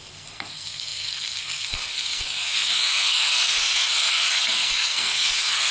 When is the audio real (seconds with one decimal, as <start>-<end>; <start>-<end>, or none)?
none